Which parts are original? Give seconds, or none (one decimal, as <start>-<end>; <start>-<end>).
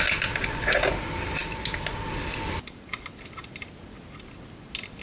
0.0-5.0